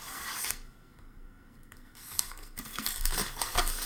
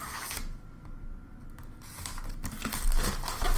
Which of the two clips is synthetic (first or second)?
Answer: first